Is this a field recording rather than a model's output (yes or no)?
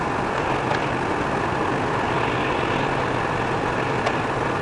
yes